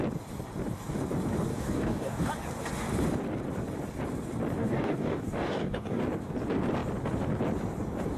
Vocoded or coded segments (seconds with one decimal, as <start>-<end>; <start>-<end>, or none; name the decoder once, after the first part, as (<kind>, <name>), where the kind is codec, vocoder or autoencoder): 1.5-2.3 (codec, DAC); 4.6-6.0